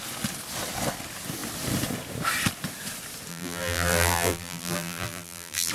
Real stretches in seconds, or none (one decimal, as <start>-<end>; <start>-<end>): 0.0-3.3